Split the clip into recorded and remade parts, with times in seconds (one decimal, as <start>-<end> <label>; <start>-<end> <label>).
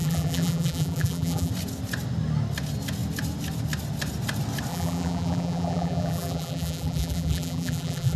0.0-1.5 remade; 1.5-4.7 recorded; 4.7-8.2 remade